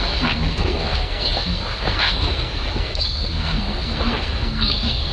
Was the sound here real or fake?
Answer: fake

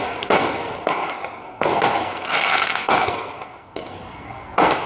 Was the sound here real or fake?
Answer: fake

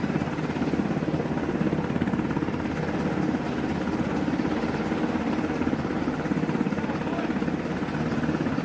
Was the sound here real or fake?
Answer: real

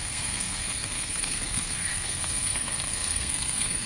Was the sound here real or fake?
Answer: fake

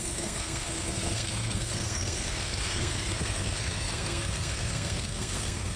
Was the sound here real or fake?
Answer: fake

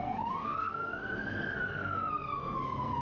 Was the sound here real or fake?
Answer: fake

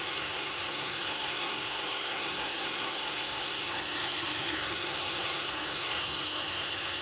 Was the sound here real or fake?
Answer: fake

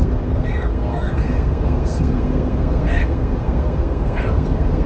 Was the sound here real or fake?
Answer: fake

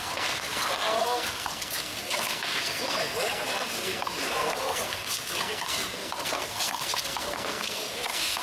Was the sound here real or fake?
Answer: fake